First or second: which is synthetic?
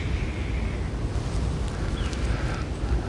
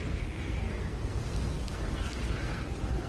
second